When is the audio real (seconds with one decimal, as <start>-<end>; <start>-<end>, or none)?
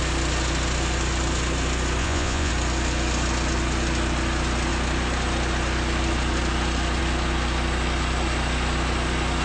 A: 0.0-2.0; 2.5-9.4